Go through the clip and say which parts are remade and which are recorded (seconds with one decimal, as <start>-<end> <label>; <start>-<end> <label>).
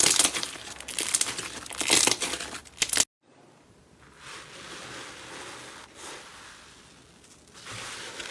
0.0-8.3 recorded